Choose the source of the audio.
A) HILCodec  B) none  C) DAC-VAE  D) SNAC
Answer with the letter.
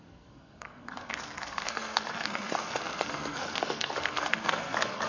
D